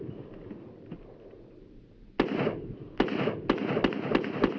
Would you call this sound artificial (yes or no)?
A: no